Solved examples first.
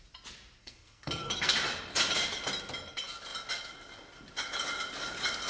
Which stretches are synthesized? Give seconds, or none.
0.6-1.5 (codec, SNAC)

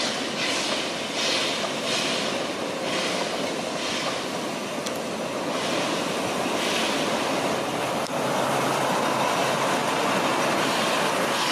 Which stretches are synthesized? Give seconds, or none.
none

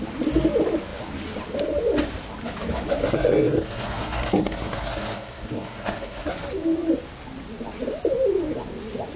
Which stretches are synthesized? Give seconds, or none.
3.0-6.3 (codec, SNAC)

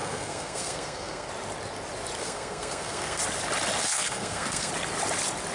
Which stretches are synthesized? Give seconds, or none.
0.0-1.3 (codec, SNAC); 2.2-3.2; 3.8-4.7

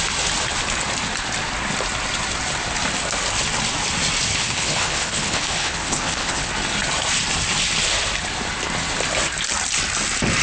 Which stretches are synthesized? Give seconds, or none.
4.3-6.5 (codec, HILCodec)